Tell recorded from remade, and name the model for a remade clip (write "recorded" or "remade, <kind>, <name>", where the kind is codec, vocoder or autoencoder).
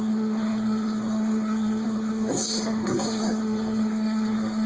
remade, codec, SNAC